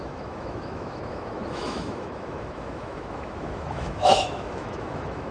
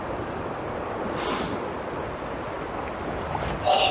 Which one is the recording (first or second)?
second